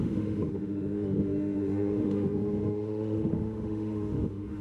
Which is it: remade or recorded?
remade